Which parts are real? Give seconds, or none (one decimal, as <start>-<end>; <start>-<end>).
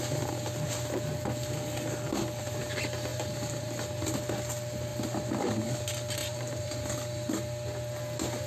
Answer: 0.0-3.1; 3.8-4.9; 5.7-6.2; 6.8-8.5